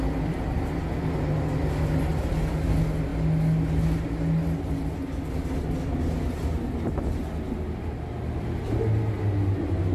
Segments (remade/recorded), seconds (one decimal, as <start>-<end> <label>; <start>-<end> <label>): 0.0-9.9 recorded